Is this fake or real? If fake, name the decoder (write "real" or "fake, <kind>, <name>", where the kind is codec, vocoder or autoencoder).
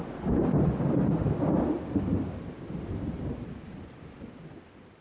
real